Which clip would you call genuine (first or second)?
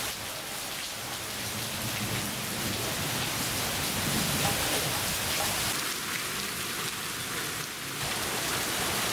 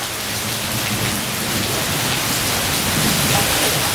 second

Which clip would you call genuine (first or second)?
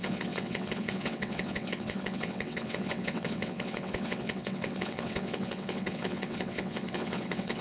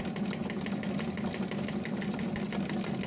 second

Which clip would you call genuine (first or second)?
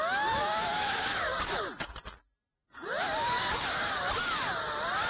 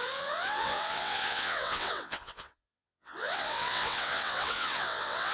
first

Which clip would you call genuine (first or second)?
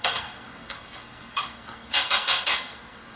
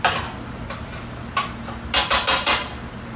second